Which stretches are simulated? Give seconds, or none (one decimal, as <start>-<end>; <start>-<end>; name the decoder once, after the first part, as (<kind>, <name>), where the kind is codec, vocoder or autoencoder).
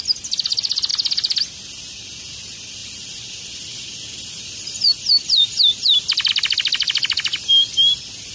0.9-1.4 (vocoder, BigVGAN v2); 2.8-6.3